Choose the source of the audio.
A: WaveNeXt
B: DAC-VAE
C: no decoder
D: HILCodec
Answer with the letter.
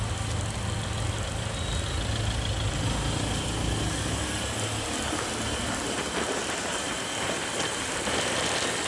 C